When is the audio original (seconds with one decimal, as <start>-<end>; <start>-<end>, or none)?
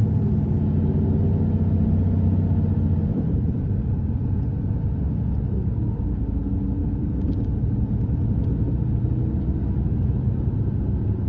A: 0.5-3.1; 4.5-6.8; 8.4-11.3